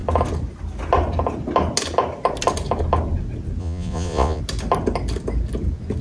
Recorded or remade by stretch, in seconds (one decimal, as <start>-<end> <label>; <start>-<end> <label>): 0.0-3.6 recorded; 3.6-4.4 remade; 4.4-6.0 recorded